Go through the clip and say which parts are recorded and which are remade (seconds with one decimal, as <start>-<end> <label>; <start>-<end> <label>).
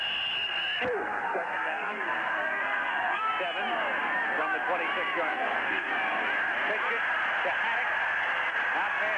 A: 0.0-1.0 recorded; 1.0-3.3 remade; 3.3-5.3 recorded; 5.3-5.9 remade; 5.9-9.2 recorded